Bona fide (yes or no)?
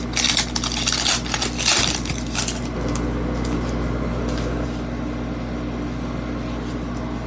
yes